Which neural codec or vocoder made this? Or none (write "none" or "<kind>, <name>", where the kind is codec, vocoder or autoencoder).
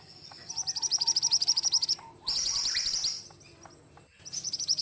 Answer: none